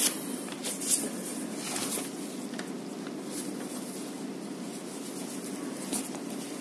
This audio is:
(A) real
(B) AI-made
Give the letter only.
A